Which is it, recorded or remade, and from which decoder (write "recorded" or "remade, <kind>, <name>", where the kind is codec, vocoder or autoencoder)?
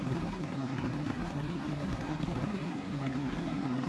remade, codec, SNAC